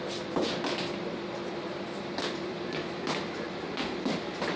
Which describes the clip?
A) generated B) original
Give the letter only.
B